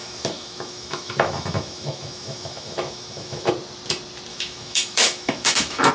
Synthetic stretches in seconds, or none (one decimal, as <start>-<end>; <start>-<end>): 0.0-3.5; 4.3-5.9